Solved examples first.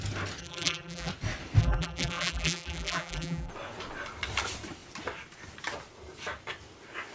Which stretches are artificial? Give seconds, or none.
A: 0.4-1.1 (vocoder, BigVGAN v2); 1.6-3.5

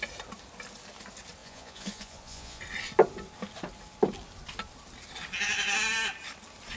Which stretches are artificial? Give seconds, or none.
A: 1.4-2.6 (vocoder, Vocos)

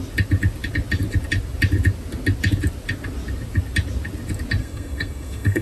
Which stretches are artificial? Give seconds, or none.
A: 4.6-5.6 (codec, SNAC)